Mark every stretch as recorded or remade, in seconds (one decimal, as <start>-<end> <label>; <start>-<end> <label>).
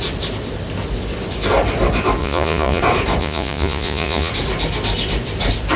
0.0-2.2 recorded; 2.2-2.8 remade; 2.8-3.2 recorded; 3.2-4.3 remade; 4.3-5.8 recorded